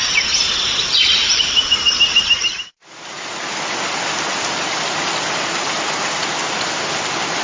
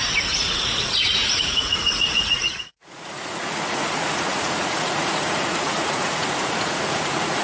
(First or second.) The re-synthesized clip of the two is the second